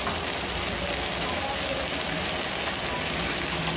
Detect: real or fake real